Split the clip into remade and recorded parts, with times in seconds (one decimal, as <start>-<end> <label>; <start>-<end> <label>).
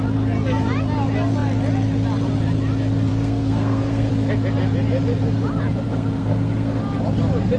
0.0-3.1 recorded; 3.1-4.1 remade; 4.1-5.9 recorded; 5.9-6.8 remade; 6.8-7.6 recorded